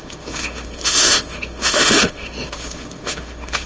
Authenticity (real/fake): fake